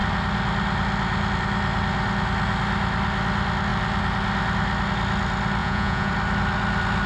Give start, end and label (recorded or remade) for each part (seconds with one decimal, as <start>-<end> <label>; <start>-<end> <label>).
0.0-5.6 recorded; 5.6-6.1 remade; 6.1-7.1 recorded